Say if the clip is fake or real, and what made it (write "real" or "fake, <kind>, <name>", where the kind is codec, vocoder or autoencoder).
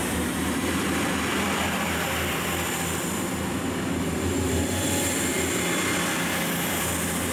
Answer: fake, vocoder, BigVGAN v2